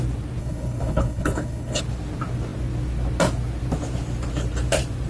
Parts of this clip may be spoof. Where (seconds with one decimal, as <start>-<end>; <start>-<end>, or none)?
0.4-1.8